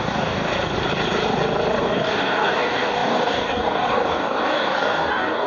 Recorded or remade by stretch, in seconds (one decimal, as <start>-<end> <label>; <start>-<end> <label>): 0.0-0.5 remade; 0.5-1.8 recorded; 1.8-5.5 remade